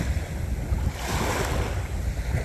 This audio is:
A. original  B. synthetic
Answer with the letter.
A